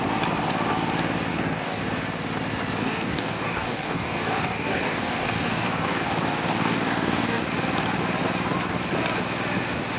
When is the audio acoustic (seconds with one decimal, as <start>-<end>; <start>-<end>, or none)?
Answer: 0.0-1.3; 1.8-2.8; 7.4-10.0